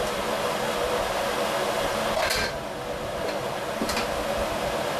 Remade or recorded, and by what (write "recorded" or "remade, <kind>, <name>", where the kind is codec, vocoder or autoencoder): recorded